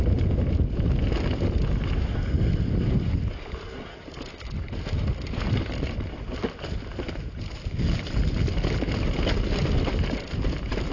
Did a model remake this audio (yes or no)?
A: no